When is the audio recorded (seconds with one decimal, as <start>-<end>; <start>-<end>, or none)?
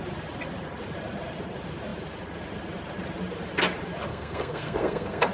0.0-4.1